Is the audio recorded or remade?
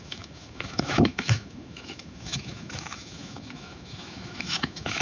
remade